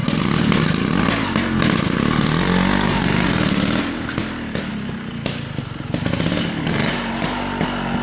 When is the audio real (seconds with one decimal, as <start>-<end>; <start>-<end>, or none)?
0.0-8.0